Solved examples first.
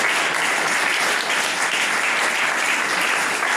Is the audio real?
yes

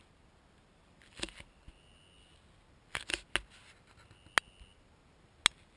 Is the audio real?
yes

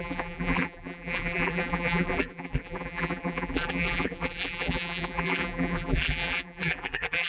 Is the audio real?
no